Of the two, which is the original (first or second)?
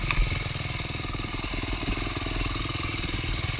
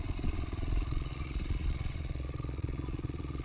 first